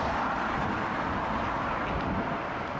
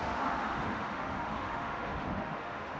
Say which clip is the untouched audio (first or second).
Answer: first